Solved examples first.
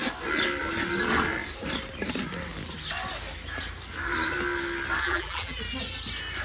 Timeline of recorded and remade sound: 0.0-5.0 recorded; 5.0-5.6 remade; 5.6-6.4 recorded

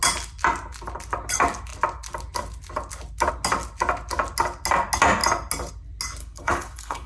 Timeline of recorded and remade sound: 0.0-6.2 recorded; 6.2-7.1 remade

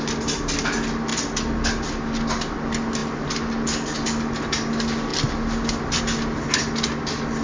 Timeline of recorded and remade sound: 0.0-7.4 recorded

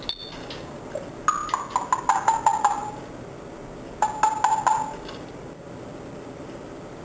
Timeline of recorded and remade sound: 0.0-7.0 recorded

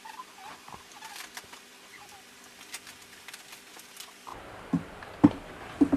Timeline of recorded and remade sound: 0.0-4.3 recorded; 4.3-5.5 remade; 5.5-6.0 recorded

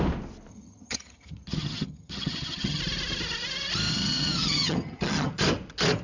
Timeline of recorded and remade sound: 0.0-0.5 recorded; 0.5-2.8 remade; 2.8-3.9 recorded; 3.9-5.3 remade; 5.3-6.0 recorded